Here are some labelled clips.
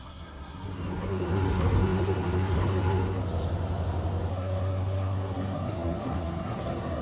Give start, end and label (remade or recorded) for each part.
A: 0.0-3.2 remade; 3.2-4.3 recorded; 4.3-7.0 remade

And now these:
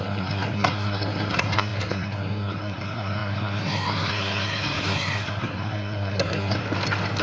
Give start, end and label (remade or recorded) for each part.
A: 0.0-6.6 remade; 6.6-7.2 recorded

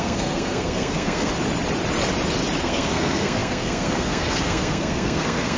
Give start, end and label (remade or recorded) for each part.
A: 0.0-1.3 remade; 1.3-2.6 recorded; 2.6-5.6 remade

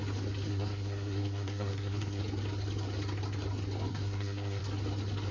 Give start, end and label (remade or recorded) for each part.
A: 0.0-0.5 recorded; 0.5-2.2 remade; 2.2-3.9 recorded; 3.9-4.6 remade; 4.6-5.3 recorded

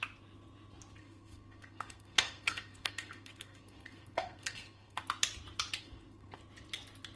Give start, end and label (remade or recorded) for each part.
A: 0.0-1.0 recorded; 1.0-5.0 remade; 5.0-5.8 recorded; 5.8-6.4 remade; 6.4-7.2 recorded